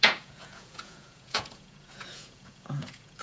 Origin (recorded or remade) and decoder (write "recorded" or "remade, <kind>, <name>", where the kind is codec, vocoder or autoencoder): remade, vocoder, Vocos